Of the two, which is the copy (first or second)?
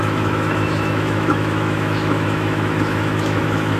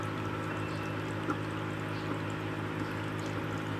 first